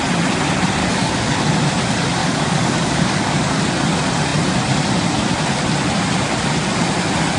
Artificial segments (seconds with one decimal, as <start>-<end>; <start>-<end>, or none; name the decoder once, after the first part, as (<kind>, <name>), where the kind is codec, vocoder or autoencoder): 0.8-1.4 (codec, DAC); 2.2-3.6